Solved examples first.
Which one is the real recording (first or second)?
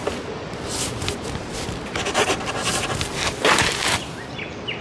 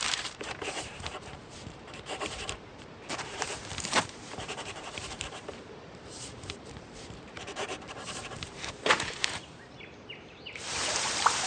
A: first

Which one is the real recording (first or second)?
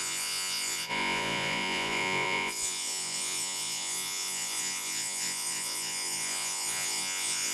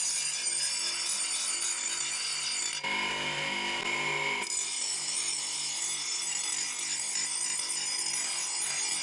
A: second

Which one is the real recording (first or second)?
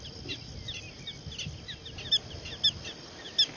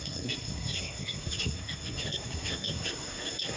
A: first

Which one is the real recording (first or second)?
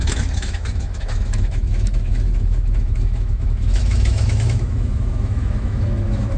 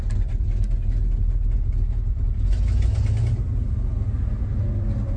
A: second